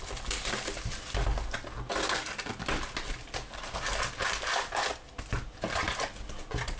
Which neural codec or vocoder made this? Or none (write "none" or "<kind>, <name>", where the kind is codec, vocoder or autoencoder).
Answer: none